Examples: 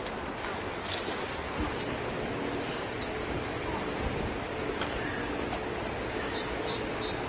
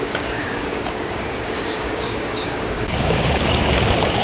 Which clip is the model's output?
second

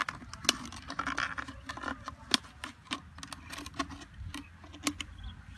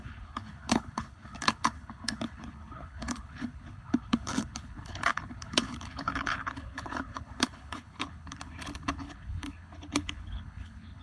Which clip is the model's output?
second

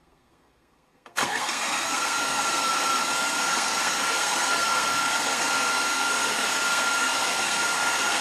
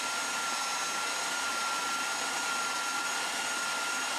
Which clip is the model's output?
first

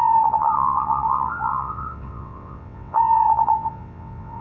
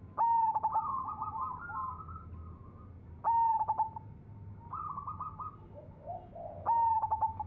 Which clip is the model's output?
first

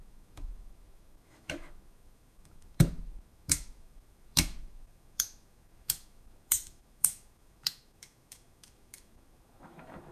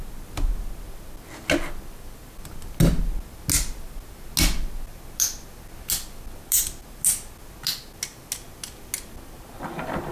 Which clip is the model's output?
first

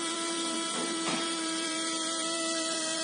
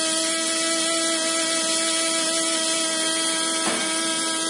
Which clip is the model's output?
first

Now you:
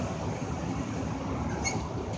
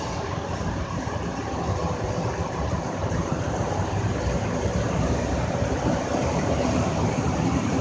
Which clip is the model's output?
second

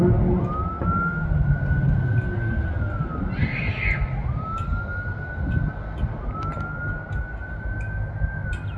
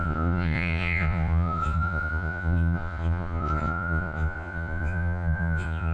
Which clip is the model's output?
second